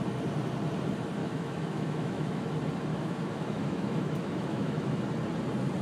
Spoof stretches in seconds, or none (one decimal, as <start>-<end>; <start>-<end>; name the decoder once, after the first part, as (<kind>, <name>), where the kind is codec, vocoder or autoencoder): 1.2-2.4 (autoencoder, DAC-VAE); 2.9-5.0

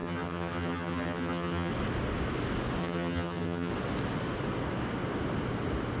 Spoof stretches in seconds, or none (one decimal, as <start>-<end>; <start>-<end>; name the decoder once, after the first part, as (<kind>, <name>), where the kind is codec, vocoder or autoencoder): 0.0-1.7 (vocoder, HiFi-GAN); 2.8-3.7

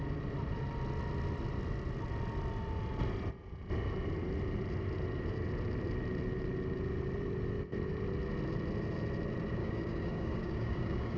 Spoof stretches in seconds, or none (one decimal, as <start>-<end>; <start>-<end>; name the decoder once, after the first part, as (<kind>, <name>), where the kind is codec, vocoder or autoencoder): 9.6-11.2 (codec, DAC)

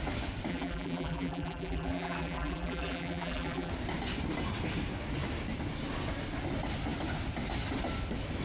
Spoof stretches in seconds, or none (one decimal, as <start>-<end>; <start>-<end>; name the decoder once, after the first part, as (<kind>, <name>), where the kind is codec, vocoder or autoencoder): 0.5-3.7 (vocoder, BigVGAN v2)

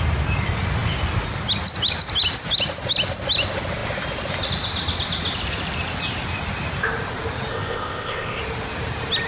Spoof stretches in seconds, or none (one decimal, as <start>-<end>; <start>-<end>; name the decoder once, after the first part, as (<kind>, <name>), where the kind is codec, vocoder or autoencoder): 7.5-8.4 (codec, ZipCodec)

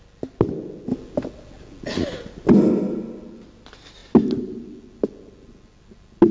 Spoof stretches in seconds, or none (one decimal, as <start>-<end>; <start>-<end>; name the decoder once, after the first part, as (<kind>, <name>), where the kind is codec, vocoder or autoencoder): none

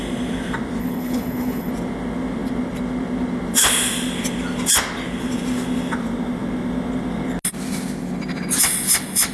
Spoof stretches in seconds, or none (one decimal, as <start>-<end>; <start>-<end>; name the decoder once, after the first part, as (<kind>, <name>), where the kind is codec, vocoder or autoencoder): 0.8-1.7 (codec, HILCodec)